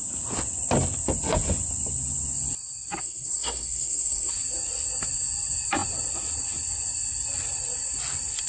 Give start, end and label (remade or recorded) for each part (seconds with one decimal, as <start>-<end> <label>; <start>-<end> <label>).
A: 0.0-3.0 recorded; 3.0-4.3 remade; 4.3-8.5 recorded